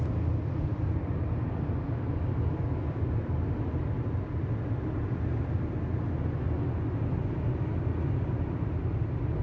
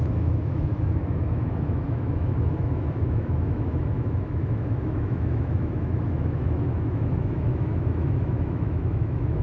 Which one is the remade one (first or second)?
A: second